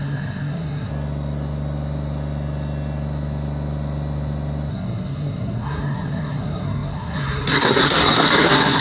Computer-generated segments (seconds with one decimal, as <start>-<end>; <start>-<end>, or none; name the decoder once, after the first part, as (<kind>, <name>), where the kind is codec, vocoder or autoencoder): 0.0-0.9 (codec, SNAC); 4.7-8.8